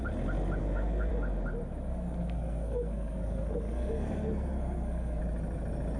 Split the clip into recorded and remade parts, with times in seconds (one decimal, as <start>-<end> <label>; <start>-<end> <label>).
0.0-0.6 recorded; 0.6-1.1 remade; 1.1-1.9 recorded; 1.9-5.2 remade; 5.2-6.0 recorded